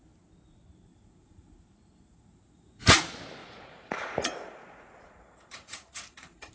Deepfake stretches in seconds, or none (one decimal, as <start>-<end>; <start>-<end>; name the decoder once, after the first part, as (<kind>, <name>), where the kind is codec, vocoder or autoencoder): 0.9-3.0 (vocoder, Vocos); 3.4-6.5